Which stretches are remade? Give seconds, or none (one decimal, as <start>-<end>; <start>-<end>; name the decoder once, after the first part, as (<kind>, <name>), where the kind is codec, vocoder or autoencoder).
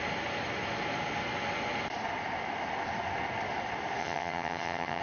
4.0-5.0 (vocoder, HiFi-GAN)